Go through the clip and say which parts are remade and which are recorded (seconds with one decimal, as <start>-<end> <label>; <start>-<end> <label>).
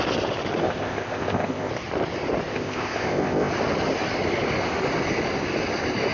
0.0-0.6 recorded; 0.6-1.7 remade; 1.7-2.5 recorded; 2.5-3.5 remade; 3.5-6.1 recorded